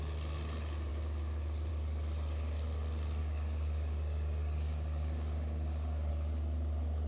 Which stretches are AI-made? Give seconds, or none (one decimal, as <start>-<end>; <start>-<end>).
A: 3.2-6.1